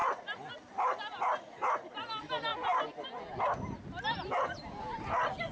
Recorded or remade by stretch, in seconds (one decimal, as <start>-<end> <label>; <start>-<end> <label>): 0.0-5.5 recorded